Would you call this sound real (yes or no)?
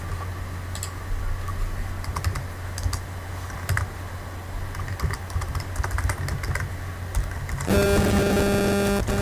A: yes